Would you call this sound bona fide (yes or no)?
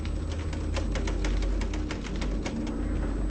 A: yes